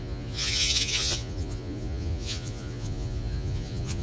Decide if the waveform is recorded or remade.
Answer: remade